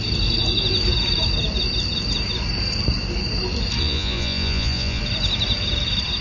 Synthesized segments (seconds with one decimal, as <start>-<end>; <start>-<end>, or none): 3.8-5.0